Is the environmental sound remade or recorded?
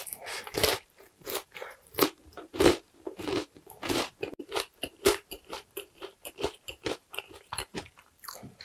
remade